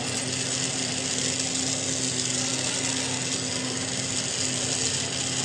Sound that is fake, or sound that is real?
real